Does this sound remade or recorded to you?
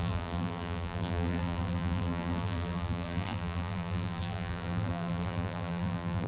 remade